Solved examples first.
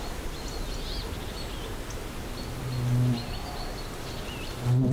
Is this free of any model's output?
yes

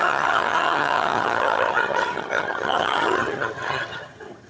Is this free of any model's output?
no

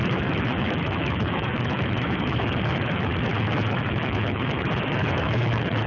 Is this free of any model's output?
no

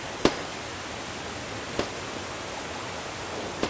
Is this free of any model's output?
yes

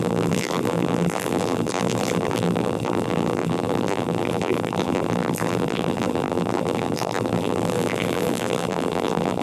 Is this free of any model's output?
no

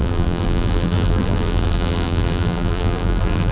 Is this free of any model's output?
no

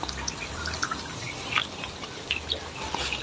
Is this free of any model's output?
yes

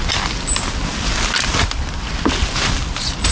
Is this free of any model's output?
yes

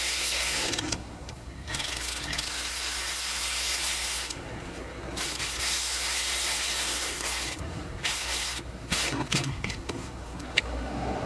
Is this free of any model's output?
no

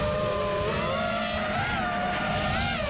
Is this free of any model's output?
yes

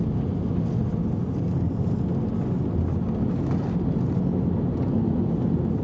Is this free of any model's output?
yes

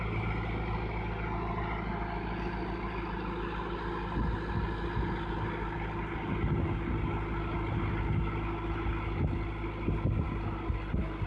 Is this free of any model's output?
yes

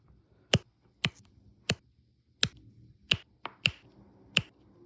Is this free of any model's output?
yes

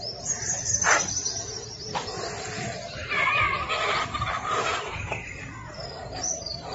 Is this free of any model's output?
yes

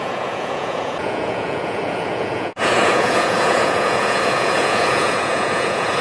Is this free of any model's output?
no